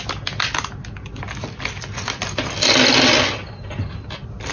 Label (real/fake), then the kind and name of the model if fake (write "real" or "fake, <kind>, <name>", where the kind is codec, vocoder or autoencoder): real